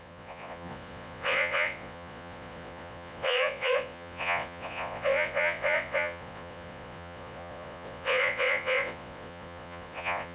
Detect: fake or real fake